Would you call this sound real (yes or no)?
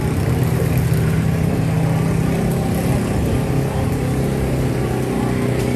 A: yes